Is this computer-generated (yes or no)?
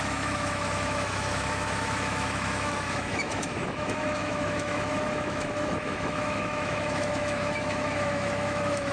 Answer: yes